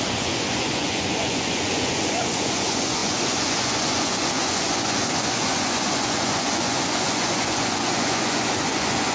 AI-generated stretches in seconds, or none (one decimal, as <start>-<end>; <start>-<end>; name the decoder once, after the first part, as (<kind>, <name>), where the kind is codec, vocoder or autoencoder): 0.0-9.1 (vocoder, Vocos)